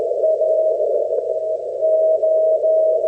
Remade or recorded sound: recorded